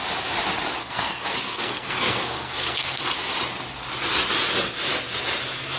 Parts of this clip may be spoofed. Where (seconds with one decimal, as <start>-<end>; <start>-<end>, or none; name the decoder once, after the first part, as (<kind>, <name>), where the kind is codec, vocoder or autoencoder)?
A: 0.8-3.0 (codec, SNAC)